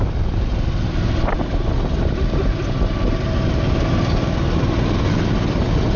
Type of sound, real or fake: real